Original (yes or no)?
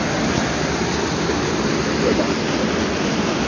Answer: yes